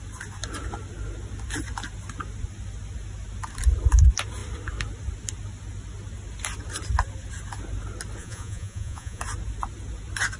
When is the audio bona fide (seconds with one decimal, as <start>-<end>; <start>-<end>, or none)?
0.0-8.2; 9.2-10.4